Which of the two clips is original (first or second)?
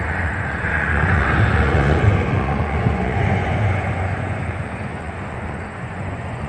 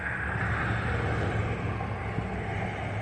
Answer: second